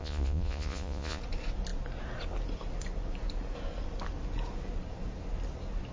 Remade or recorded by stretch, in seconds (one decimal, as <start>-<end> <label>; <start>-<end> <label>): 0.0-1.2 remade; 1.2-5.9 recorded